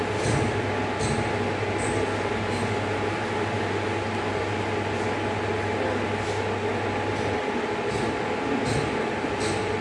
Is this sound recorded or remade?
recorded